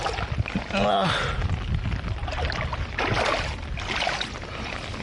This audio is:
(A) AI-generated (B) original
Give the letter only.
B